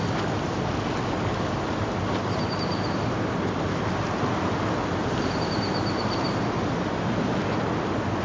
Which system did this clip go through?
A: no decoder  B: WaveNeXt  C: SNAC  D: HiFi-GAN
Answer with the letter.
A